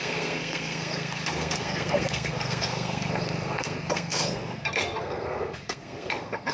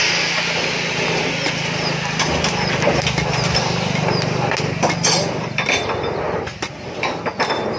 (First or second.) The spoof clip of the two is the first